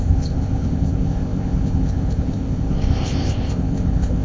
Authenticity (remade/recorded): remade